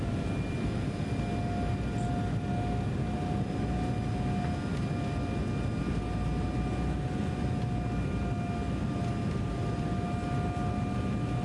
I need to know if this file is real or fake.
real